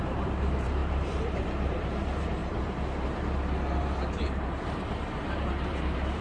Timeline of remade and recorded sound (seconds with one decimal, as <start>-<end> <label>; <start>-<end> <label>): 0.0-6.2 remade